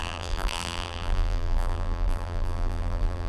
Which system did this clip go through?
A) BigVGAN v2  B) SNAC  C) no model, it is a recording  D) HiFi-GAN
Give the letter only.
A